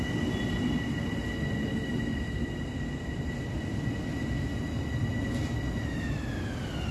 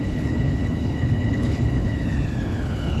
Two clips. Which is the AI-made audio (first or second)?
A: second